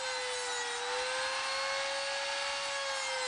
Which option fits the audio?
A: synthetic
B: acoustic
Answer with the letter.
B